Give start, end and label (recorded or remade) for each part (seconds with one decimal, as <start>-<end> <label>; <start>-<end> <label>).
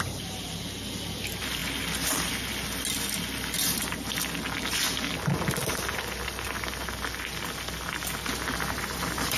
0.0-9.4 recorded